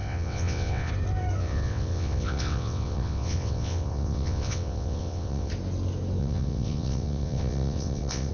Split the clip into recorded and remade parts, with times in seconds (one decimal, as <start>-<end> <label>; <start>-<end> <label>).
0.0-0.9 remade; 0.9-1.4 recorded; 1.4-5.5 remade; 5.5-6.2 recorded; 6.2-8.3 remade